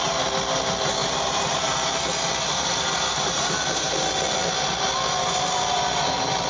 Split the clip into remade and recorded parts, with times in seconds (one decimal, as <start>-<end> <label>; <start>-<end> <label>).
0.0-1.0 recorded; 1.0-3.9 remade; 3.9-6.5 recorded